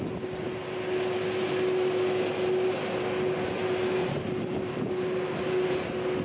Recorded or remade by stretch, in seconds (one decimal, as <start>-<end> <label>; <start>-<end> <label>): 0.0-4.0 recorded; 4.0-4.9 remade; 4.9-6.2 recorded